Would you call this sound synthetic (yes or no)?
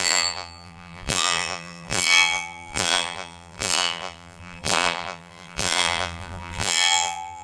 yes